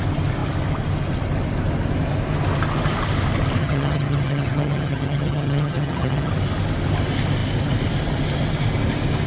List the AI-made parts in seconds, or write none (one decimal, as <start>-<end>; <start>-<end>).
3.6-6.3